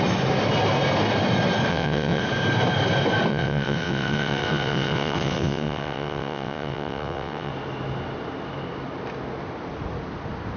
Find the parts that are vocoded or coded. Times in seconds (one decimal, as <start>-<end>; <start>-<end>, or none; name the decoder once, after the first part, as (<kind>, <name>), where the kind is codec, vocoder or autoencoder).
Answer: 1.7-2.2 (vocoder, WaveNeXt); 3.3-7.5